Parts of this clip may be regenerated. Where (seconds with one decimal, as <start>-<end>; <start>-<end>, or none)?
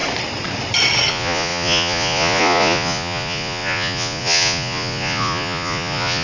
1.1-6.2